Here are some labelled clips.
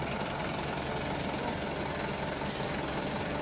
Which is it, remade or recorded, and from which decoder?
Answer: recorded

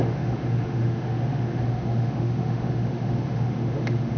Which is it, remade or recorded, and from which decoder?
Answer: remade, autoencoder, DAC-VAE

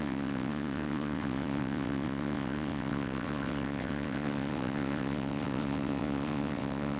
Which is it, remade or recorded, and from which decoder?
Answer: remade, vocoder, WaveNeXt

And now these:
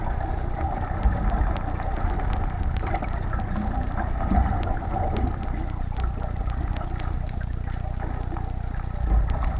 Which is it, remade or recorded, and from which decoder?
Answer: recorded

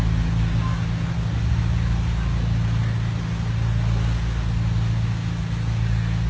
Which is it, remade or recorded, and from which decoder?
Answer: recorded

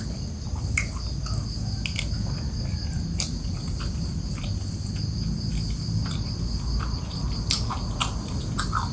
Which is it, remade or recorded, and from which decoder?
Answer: recorded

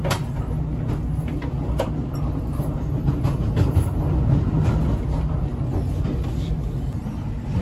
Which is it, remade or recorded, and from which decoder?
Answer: recorded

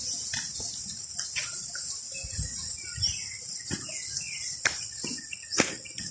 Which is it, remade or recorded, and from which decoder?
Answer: recorded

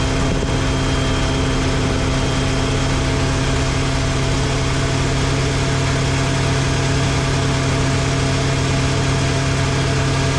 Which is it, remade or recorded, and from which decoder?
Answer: recorded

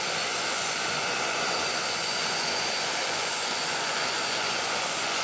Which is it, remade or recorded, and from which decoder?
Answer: remade, vocoder, Vocos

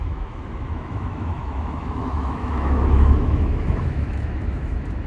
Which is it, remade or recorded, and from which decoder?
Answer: remade, autoencoder, DAC-VAE